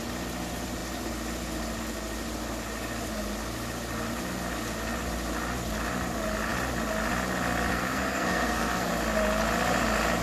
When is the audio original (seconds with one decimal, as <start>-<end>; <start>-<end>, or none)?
0.0-7.7; 8.9-10.2